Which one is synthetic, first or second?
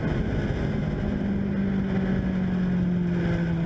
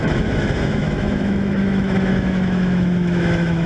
second